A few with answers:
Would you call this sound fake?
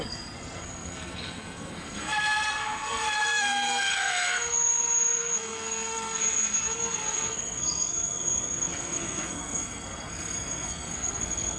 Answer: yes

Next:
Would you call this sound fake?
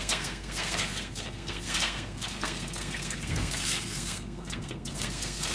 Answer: yes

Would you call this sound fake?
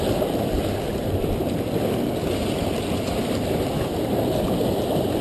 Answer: no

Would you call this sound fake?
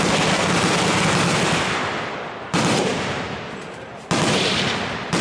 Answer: no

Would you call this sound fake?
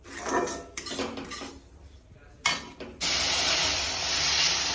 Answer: no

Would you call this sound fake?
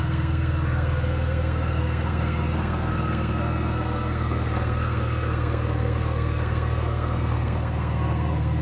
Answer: yes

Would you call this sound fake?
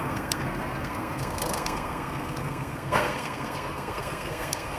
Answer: yes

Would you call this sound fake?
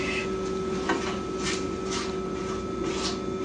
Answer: no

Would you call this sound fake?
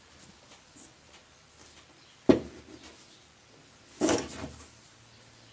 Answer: no